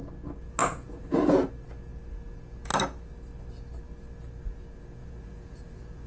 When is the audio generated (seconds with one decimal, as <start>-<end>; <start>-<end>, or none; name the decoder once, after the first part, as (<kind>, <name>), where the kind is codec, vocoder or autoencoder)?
0.6-1.5 (vocoder, Vocos); 5.0-6.1